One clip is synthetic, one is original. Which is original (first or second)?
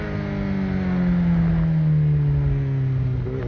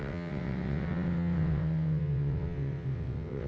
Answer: first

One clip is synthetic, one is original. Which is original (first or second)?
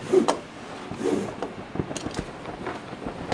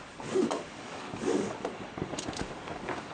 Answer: first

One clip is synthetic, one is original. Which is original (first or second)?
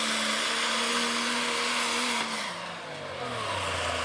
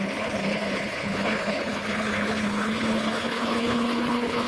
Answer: first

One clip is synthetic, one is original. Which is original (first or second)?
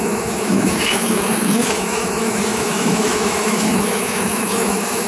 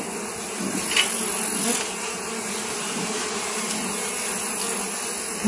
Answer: second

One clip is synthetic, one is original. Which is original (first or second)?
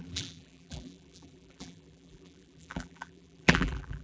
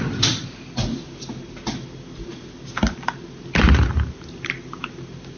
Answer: second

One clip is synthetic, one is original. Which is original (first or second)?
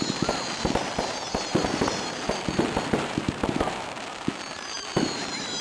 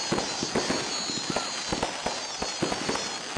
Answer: second